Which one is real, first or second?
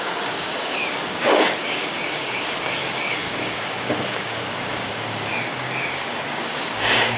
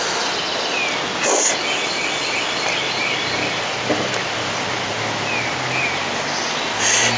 second